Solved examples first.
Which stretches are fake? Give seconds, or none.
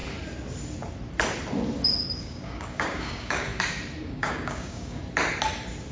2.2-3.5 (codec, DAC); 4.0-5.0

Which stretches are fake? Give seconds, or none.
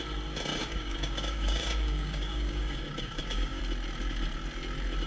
0.6-3.6 (codec, DAC)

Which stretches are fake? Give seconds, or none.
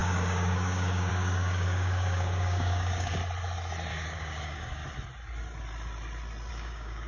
0.0-3.2 (codec, DAC); 3.9-4.8; 6.5-7.1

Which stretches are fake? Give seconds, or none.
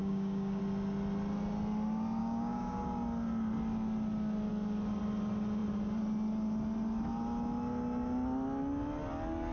0.0-0.6 (codec, DAC); 2.2-2.8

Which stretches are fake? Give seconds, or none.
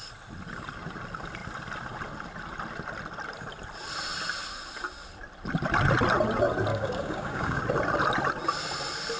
6.7-7.6 (codec, DAC)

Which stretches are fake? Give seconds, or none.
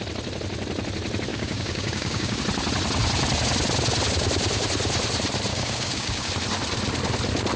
1.3-2.4 (codec, DAC); 5.5-6.3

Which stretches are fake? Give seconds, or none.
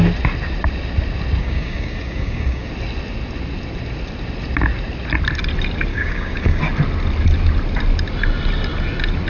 1.4-2.7 (codec, DAC); 5.9-6.6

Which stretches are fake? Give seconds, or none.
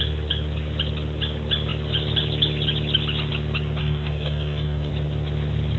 3.8-4.9 (codec, DAC)